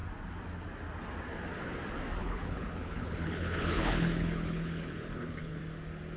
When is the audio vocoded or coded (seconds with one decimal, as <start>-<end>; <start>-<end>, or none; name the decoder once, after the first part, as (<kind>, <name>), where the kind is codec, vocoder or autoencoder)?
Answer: 2.2-5.6 (codec, HILCodec)